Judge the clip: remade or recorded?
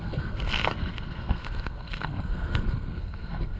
remade